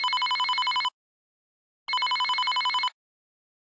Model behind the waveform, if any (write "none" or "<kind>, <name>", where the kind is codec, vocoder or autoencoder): none